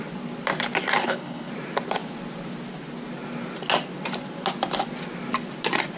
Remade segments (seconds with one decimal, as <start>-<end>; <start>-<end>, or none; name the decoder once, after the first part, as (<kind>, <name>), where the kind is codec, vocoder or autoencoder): 1.0-1.5 (codec, HILCodec)